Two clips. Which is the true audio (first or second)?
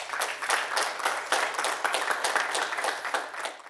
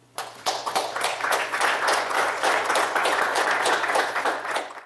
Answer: first